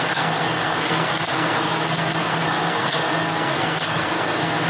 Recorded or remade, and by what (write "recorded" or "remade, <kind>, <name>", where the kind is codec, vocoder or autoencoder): remade, codec, SNAC